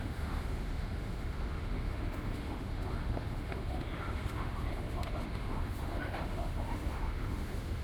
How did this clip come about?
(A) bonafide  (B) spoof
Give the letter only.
B